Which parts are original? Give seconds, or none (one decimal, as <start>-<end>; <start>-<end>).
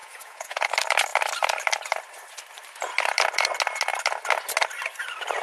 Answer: 0.7-5.4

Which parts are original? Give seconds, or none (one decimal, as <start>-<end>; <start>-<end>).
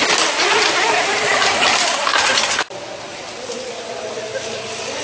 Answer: 0.0-1.1; 2.1-3.1; 3.9-4.3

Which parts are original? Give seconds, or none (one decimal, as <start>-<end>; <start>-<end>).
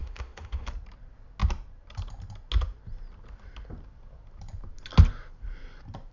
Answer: 0.7-6.1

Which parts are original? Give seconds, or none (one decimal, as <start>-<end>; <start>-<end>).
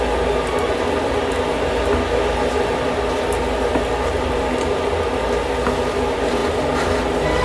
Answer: 0.0-7.4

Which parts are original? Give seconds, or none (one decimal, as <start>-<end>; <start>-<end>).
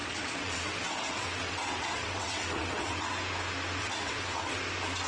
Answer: 3.1-3.8; 4.6-5.1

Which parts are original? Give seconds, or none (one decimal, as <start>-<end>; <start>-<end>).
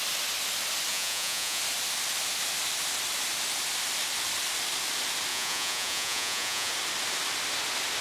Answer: 0.0-0.9; 1.6-5.3; 6.7-8.0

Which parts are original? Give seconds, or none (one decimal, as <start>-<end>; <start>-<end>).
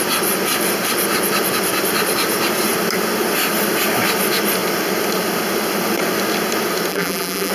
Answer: 0.0-6.9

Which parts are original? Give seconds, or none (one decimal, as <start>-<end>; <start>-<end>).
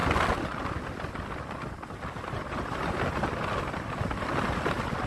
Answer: 0.0-5.1